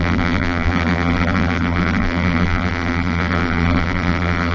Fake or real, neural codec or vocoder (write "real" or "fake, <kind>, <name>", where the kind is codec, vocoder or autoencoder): fake, vocoder, BigVGAN v2